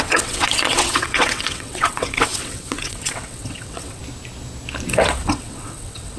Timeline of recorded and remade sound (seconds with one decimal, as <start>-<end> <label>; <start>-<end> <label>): 0.0-4.0 remade; 4.0-4.9 recorded; 4.9-6.2 remade